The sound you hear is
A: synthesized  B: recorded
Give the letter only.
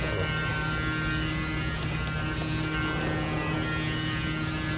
B